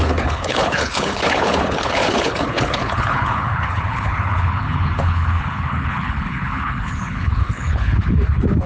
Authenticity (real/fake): fake